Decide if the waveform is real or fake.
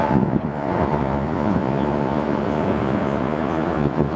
fake